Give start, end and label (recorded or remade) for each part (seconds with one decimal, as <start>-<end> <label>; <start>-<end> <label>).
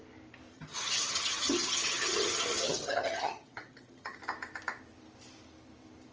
0.0-0.5 recorded; 0.5-4.2 remade; 4.2-6.1 recorded